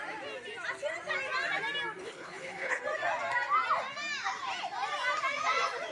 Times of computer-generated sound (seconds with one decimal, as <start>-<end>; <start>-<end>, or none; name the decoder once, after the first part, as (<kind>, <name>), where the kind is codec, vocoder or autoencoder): 2.0-2.8 (codec, HILCodec)